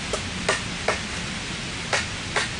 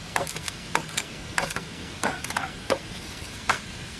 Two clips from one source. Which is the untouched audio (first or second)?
first